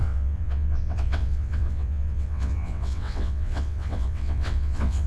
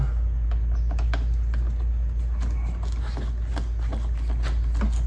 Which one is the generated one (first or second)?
first